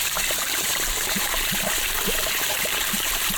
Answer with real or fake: fake